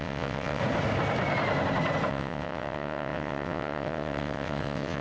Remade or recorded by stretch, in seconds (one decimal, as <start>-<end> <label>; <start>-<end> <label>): 0.0-0.6 remade; 0.6-2.1 recorded; 2.1-5.0 remade